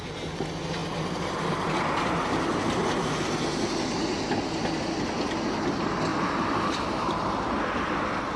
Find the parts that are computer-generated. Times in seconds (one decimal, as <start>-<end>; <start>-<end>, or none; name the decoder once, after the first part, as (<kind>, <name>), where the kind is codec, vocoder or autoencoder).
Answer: 6.1-7.6 (vocoder, BigVGAN v2)